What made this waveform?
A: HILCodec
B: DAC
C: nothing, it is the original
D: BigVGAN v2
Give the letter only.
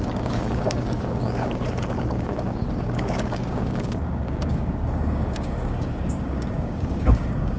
B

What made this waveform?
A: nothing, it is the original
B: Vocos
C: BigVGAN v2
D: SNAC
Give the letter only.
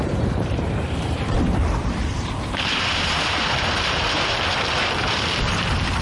C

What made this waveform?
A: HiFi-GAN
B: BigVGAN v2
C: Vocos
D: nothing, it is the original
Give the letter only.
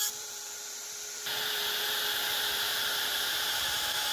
B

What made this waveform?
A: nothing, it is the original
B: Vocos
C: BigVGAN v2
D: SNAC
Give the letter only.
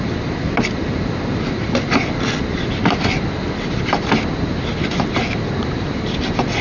A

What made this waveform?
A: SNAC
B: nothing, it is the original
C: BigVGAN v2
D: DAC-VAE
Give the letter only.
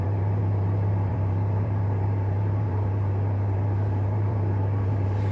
C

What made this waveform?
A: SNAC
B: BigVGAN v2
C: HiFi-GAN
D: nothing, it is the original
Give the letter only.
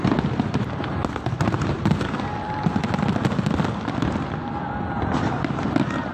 D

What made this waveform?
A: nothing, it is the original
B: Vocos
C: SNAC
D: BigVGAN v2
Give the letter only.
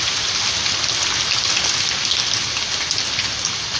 A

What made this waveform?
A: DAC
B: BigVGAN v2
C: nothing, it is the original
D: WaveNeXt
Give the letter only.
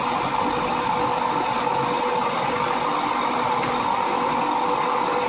C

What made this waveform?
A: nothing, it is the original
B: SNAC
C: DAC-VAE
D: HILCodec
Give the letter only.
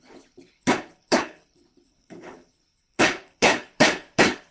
D